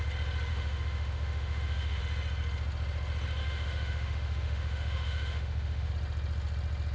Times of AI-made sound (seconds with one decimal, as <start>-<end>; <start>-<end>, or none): 0.5-2.0; 3.4-5.9

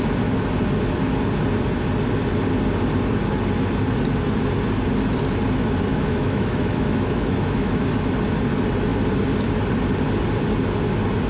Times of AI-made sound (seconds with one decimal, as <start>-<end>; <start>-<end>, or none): 5.9-7.9

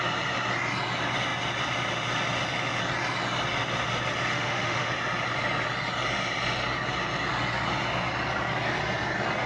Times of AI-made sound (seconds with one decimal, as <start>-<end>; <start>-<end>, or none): 4.3-4.9

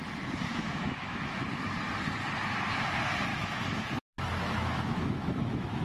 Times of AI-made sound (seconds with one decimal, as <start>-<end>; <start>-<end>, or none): 0.5-1.4; 3.3-5.8